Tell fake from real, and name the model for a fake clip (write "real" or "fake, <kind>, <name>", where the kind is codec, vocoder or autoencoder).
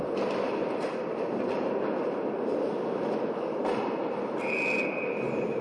real